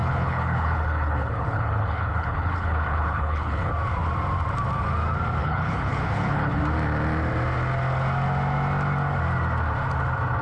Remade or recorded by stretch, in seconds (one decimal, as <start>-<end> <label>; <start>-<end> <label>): 0.0-3.7 remade; 3.7-5.4 recorded; 5.4-6.6 remade; 6.6-10.4 recorded